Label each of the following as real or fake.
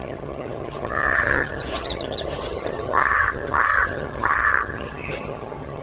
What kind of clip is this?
fake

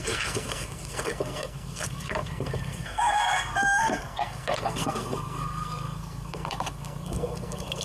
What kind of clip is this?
fake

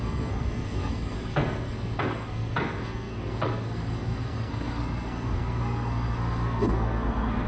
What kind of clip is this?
fake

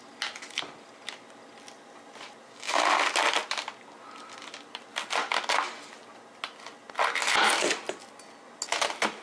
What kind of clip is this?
real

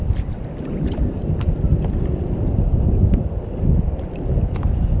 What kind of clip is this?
real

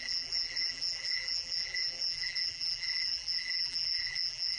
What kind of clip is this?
fake